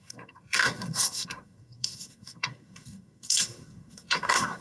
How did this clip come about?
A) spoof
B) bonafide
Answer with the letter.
A